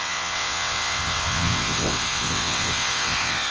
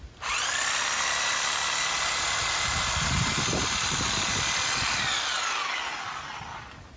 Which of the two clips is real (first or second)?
second